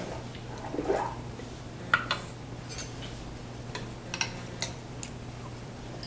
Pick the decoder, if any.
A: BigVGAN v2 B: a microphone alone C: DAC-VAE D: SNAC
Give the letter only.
B